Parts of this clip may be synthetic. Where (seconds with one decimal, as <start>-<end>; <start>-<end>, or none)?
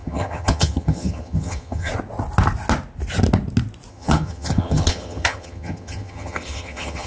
0.0-1.9; 3.9-7.1